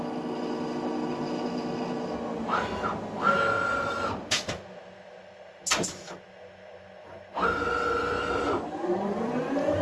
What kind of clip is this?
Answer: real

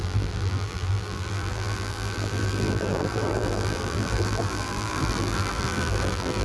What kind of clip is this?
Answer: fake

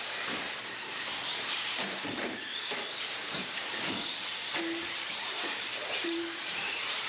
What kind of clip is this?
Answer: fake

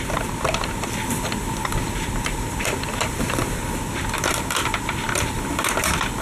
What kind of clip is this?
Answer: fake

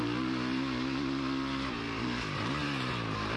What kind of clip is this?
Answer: real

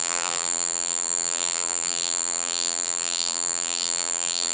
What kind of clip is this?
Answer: fake